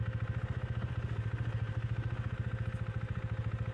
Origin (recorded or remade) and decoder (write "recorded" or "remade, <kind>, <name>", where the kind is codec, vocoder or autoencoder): recorded